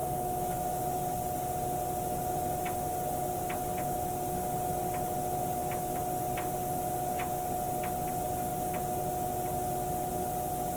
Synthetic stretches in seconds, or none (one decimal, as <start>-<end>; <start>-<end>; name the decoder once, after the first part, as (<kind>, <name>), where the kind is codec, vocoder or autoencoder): 0.0-0.8 (autoencoder, DAC-VAE)